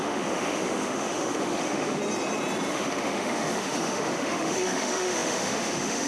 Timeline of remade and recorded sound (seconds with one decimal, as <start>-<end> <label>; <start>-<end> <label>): 0.0-2.0 remade; 2.0-2.7 recorded; 2.7-6.1 remade